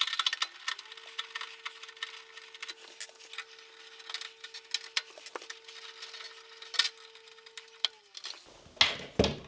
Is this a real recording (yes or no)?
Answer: yes